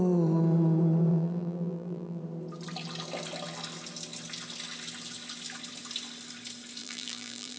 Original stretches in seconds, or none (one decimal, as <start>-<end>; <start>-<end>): 0.0-1.1; 2.2-6.8

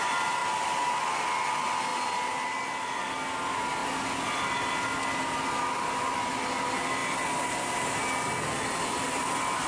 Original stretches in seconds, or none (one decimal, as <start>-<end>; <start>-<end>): 0.0-9.7

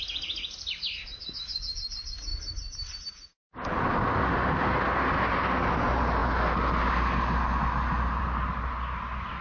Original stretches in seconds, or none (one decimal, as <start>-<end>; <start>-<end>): 0.0-9.4

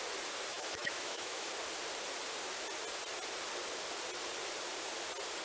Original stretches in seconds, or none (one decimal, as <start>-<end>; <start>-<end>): 0.0-0.5; 1.5-5.4

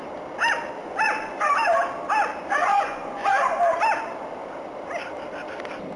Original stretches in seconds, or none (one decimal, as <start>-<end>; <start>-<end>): 0.0-0.8; 1.8-2.7; 3.7-6.0